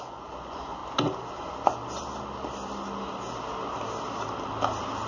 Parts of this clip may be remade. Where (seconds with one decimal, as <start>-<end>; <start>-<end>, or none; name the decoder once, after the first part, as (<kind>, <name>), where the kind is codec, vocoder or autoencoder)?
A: 0.0-0.8 (vocoder, Vocos); 1.4-1.8